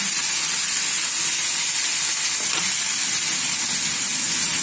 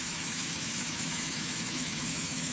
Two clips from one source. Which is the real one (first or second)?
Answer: first